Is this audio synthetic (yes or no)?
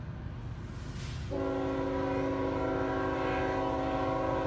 no